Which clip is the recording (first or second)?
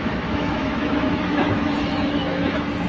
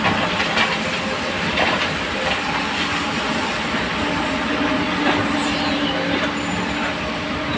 second